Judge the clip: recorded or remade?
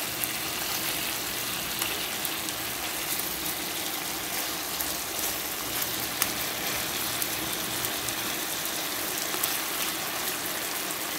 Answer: recorded